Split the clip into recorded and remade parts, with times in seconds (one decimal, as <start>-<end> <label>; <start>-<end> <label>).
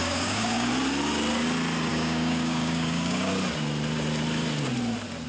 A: 0.0-0.7 remade; 0.7-1.9 recorded; 1.9-3.3 remade; 3.3-5.3 recorded